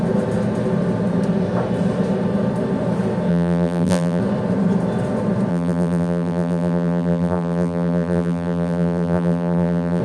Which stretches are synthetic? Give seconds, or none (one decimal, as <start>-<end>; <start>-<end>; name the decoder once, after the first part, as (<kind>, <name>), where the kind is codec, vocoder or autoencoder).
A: 3.3-4.2 (vocoder, BigVGAN v2); 5.5-10.0